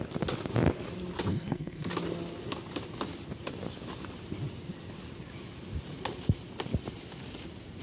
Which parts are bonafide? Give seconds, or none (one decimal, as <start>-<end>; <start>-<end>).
0.0-1.3; 1.9-7.8